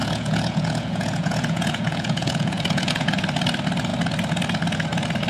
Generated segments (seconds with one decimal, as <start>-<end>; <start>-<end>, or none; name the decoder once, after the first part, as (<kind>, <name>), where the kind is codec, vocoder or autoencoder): 0.0-3.2 (vocoder, Vocos)